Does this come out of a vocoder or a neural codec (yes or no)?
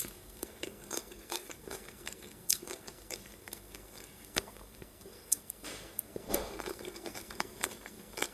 yes